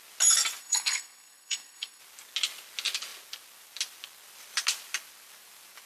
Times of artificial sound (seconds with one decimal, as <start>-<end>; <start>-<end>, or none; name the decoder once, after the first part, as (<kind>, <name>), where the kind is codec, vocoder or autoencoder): 0.6-2.0 (codec, SNAC)